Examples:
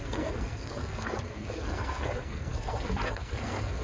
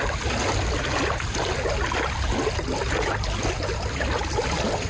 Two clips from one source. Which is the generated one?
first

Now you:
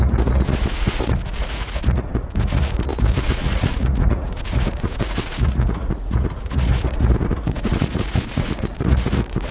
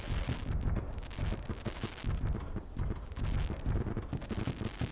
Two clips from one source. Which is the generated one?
first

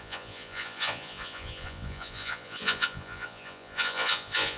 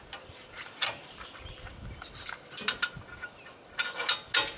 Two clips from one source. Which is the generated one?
first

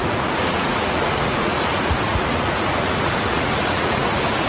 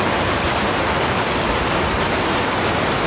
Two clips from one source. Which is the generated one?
first